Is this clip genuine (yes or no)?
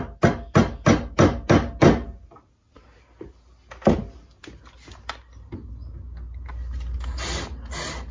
yes